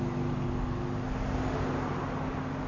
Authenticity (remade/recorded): recorded